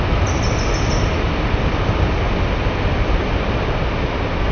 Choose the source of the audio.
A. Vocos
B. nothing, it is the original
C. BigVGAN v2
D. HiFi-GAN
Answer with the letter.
B